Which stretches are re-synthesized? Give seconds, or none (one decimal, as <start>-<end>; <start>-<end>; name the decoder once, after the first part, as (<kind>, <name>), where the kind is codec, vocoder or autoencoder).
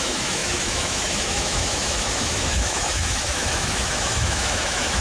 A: 0.0-5.0 (autoencoder, DAC-VAE)